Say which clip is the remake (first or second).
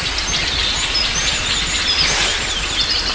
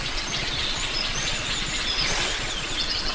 second